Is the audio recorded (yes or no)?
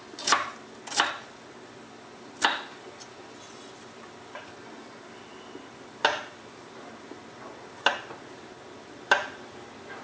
yes